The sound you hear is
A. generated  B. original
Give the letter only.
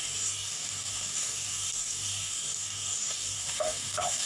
A